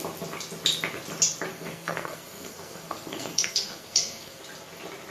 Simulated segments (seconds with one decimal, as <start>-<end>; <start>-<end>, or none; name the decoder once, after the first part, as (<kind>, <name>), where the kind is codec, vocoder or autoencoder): 1.5-4.4 (codec, SNAC)